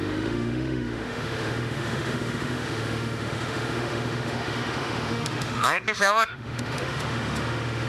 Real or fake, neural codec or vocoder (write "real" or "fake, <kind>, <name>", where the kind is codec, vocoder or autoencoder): fake, autoencoder, DAC-VAE